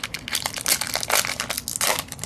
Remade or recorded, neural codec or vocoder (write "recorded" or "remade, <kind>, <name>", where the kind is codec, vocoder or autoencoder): recorded